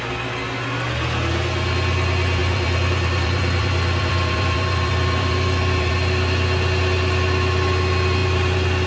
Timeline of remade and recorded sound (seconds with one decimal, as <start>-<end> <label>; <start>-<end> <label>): 0.0-2.4 recorded; 2.4-5.9 remade; 5.9-8.2 recorded; 8.2-8.9 remade